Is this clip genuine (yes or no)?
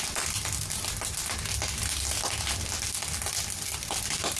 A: yes